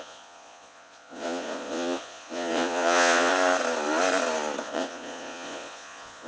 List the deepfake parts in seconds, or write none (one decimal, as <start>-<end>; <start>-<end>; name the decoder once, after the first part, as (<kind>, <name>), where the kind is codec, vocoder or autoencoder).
0.0-3.3 (vocoder, Vocos); 4.6-6.3